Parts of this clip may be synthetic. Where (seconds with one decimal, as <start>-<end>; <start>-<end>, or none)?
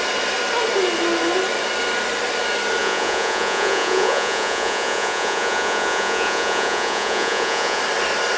2.8-7.8